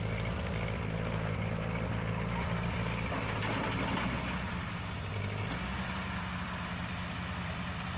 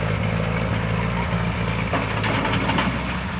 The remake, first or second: first